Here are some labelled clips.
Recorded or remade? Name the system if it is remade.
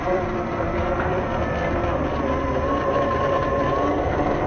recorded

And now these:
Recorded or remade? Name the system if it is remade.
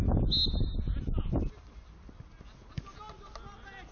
recorded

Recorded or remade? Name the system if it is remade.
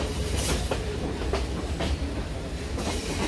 recorded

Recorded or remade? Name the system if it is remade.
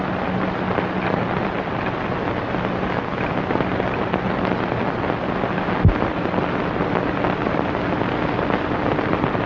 recorded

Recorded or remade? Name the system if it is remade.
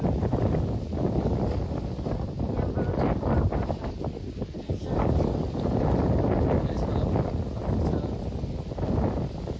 recorded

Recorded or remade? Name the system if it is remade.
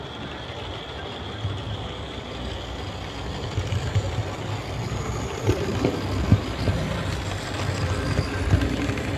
recorded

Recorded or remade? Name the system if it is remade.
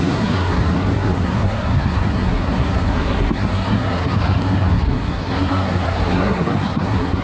remade, codec, SNAC